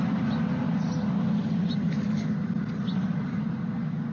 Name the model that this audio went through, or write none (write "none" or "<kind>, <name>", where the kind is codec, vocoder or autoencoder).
none